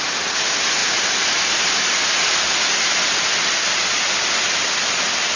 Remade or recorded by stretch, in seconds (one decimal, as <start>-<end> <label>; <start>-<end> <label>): 0.0-5.4 recorded